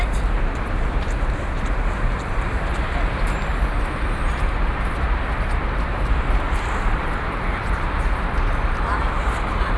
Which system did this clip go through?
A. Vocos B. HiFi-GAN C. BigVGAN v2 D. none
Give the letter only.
C